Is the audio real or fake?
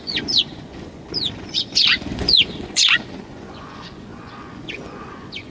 fake